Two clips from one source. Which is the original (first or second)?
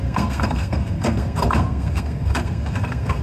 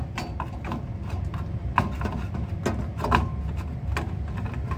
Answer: second